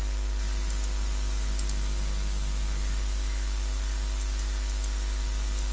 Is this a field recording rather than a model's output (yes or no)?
yes